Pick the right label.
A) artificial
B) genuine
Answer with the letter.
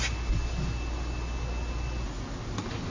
B